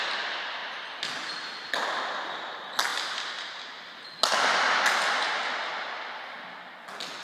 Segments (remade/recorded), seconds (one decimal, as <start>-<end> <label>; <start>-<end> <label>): 0.0-7.2 recorded